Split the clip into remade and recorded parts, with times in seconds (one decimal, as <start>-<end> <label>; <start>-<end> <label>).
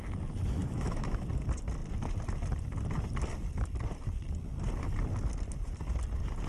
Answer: 0.0-0.6 recorded; 0.6-1.3 remade; 1.3-6.5 recorded